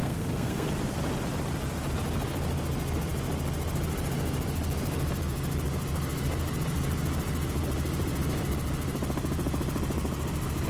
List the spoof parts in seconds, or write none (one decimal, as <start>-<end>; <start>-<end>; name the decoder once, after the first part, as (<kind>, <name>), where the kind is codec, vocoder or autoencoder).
0.0-0.7 (codec, SNAC)